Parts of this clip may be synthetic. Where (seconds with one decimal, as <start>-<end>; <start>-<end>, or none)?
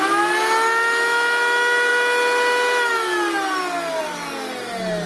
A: none